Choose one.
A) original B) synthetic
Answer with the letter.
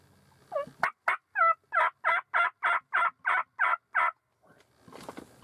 A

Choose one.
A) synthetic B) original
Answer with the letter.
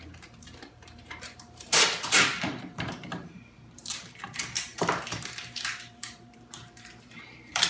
A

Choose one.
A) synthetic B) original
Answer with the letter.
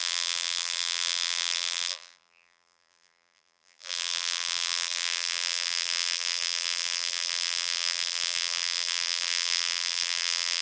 A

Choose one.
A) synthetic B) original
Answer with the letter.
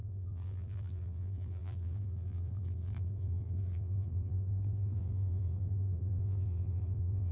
A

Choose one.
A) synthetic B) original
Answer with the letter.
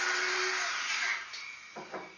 B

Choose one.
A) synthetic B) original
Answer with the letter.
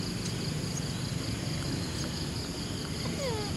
B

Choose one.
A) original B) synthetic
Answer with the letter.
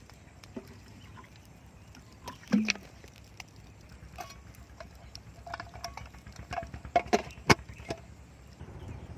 A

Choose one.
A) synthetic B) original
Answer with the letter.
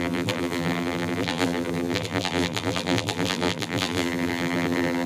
A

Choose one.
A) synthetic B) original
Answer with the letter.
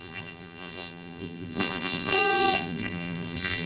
A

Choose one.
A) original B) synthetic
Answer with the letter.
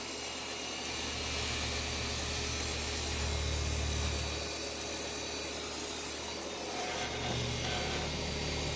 A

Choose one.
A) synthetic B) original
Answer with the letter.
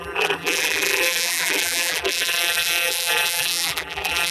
A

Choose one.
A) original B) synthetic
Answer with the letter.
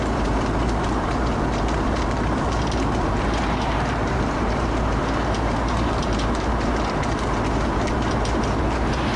B